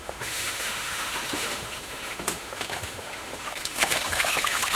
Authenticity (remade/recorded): remade